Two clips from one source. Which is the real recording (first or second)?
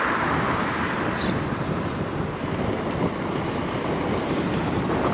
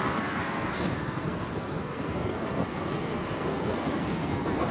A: first